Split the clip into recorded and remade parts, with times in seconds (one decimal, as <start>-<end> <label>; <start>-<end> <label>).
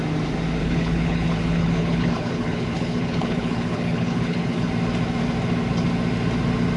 0.0-0.6 recorded; 0.6-4.7 remade; 4.7-6.8 recorded